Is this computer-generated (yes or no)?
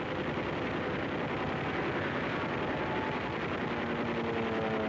no